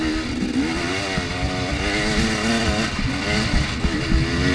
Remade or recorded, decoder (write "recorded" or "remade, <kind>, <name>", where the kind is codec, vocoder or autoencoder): recorded